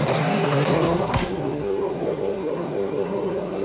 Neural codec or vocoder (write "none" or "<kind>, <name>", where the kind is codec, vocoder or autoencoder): codec, SNAC